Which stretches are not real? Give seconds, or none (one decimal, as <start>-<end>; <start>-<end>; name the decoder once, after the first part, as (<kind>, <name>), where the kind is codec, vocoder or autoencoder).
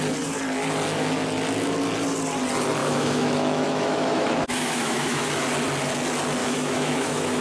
2.8-5.3 (autoencoder, DAC-VAE); 6.4-7.4